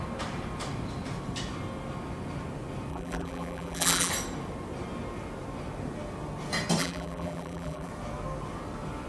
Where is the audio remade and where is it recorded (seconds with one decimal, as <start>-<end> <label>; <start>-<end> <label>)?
0.0-2.9 recorded; 2.9-4.1 remade; 4.1-6.8 recorded; 6.8-7.9 remade; 7.9-9.1 recorded